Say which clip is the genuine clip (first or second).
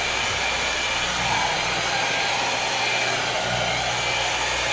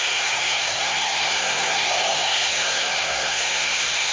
first